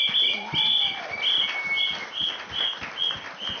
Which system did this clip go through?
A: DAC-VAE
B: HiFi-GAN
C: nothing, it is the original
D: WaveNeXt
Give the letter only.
C